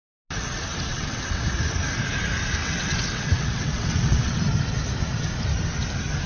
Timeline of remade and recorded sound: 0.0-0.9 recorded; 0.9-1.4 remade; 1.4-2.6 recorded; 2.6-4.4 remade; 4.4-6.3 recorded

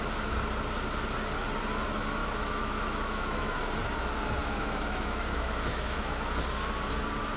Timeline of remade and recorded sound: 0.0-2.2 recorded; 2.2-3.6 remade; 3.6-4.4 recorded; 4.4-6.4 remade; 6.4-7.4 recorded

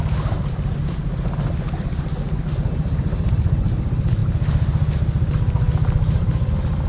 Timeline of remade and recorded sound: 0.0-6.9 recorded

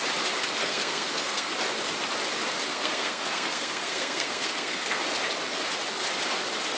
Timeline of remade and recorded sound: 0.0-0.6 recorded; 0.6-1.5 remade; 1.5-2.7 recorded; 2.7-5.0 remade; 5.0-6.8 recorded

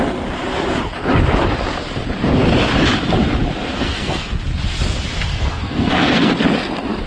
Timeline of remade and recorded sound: 0.0-3.7 recorded; 3.7-4.4 remade; 4.4-5.3 recorded; 5.3-6.3 remade; 6.3-7.1 recorded